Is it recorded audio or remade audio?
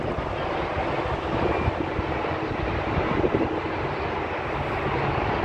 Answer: recorded